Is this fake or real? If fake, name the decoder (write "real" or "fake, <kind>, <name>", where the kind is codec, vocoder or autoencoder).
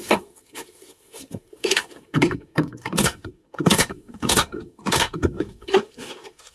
fake, codec, SNAC